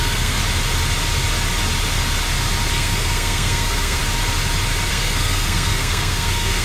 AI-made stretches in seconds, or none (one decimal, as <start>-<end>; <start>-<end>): 0.0-0.4; 2.7-4.0; 4.9-6.6